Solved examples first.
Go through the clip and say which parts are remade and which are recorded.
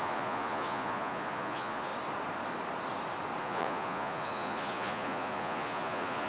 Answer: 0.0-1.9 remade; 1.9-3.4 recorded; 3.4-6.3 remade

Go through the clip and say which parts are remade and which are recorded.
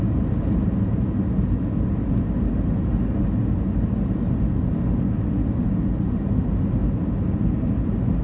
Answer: 0.0-8.2 recorded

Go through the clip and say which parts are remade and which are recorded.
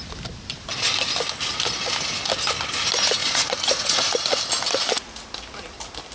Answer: 0.0-3.2 recorded; 3.2-4.2 remade; 4.2-6.1 recorded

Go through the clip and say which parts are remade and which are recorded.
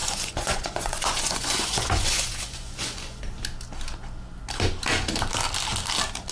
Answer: 0.0-3.2 remade; 3.2-6.3 recorded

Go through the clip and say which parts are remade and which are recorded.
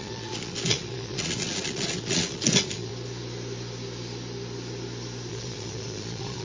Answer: 0.0-2.9 remade; 2.9-5.3 recorded; 5.3-6.4 remade